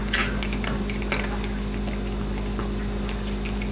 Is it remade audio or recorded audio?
recorded